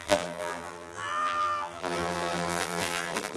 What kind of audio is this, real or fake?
fake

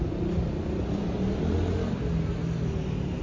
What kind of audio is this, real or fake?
real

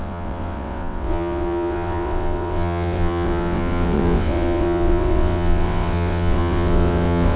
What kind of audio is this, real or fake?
fake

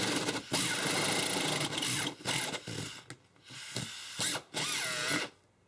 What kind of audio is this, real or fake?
real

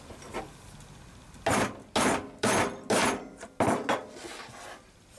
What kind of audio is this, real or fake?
real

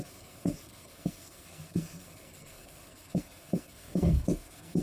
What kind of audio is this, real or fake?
fake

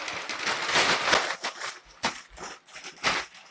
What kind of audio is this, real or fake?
real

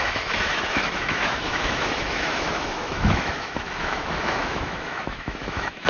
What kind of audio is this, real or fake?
fake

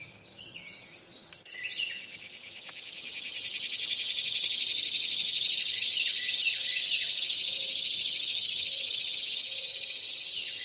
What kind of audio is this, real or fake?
fake